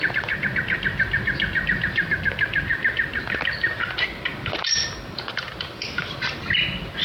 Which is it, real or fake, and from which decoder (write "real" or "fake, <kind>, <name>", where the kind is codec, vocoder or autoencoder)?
real